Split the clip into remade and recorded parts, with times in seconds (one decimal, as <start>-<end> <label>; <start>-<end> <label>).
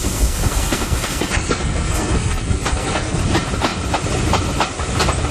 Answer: 0.0-3.2 remade; 3.2-5.3 recorded